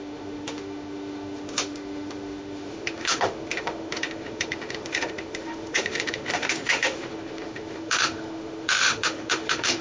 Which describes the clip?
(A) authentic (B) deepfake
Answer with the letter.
B